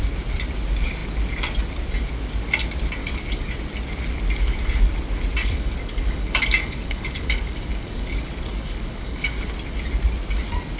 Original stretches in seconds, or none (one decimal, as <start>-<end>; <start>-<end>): 0.0-3.0; 3.5-5.4; 9.5-10.8